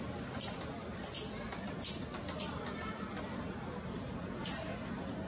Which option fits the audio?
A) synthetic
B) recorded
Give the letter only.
B